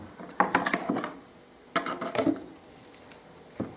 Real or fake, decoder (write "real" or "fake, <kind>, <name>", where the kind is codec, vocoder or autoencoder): real